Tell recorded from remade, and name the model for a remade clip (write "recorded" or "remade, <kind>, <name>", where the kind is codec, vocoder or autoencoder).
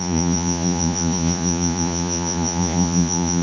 remade, vocoder, Vocos